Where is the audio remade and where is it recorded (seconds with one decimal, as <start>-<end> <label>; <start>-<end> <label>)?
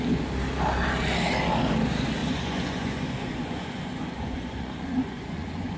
0.0-2.2 recorded; 2.2-5.8 remade